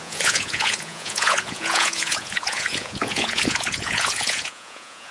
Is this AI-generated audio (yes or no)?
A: yes